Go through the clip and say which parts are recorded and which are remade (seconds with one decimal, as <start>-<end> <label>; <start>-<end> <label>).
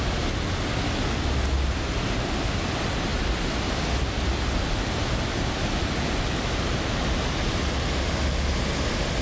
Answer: 0.0-9.2 recorded